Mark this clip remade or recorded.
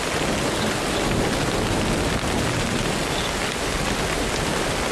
recorded